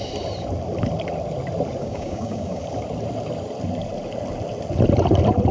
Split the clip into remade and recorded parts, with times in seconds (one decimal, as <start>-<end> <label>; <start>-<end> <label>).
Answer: 0.0-1.8 recorded; 1.8-2.6 remade; 2.6-5.5 recorded